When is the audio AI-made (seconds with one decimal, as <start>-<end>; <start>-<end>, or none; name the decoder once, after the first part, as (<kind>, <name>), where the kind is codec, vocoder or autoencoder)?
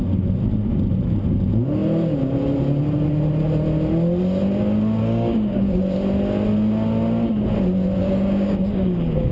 5.0-5.8 (codec, DAC); 8.0-9.3